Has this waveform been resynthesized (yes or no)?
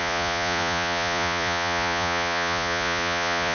yes